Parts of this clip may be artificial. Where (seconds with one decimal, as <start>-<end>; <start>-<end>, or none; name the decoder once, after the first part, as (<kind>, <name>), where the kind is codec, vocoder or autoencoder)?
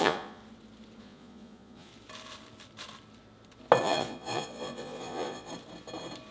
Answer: 0.0-0.4 (vocoder, Vocos); 1.0-1.9; 3.8-5.5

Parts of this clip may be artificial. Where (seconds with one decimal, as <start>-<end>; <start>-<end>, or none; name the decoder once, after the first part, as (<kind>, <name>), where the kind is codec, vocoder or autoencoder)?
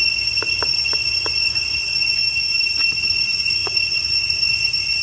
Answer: 0.0-2.2 (vocoder, Vocos); 3.0-5.0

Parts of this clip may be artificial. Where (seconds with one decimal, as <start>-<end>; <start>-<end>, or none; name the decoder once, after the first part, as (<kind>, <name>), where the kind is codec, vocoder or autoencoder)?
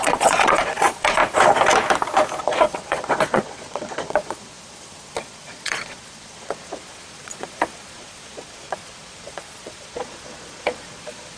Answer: 0.0-1.2 (vocoder, Vocos); 2.4-11.4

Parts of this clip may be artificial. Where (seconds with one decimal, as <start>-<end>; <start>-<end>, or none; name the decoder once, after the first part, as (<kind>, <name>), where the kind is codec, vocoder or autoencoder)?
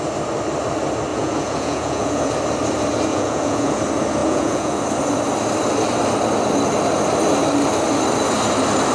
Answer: 1.1-2.3 (vocoder, Vocos); 3.1-3.8; 4.2-4.8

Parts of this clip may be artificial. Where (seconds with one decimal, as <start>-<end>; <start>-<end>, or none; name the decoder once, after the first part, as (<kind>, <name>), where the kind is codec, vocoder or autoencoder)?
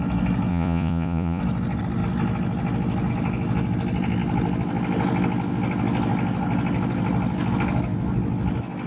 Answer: 0.5-1.4 (vocoder, Vocos)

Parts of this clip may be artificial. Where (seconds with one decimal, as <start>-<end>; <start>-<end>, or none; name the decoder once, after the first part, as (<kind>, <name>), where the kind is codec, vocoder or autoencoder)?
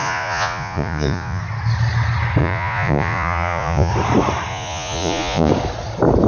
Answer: 0.0-1.4 (vocoder, Vocos); 2.4-3.9; 4.5-5.5